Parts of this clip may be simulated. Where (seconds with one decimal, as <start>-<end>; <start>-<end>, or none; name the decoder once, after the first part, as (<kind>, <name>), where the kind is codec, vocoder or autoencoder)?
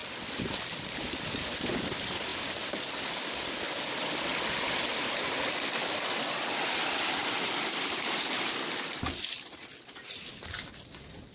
none